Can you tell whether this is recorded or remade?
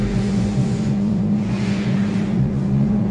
remade